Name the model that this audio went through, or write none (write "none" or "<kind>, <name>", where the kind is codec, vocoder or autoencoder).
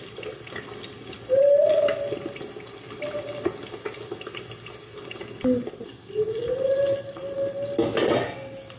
none